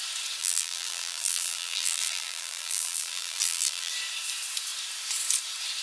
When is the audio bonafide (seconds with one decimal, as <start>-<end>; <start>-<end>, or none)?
0.0-0.4; 3.9-5.8